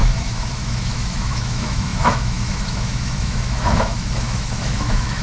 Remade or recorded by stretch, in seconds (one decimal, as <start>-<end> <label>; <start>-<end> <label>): 0.0-5.2 remade